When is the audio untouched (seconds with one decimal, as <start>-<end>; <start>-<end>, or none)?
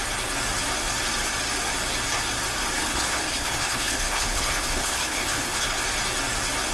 0.0-2.8; 5.8-6.7